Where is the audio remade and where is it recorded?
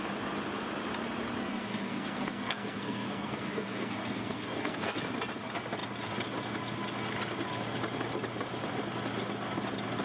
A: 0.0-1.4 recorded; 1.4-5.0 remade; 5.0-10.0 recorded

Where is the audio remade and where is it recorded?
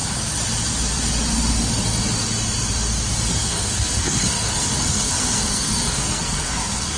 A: 0.0-3.3 recorded; 3.3-7.0 remade